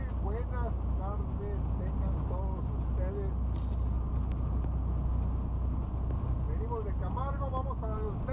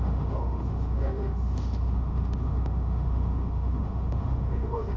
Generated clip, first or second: second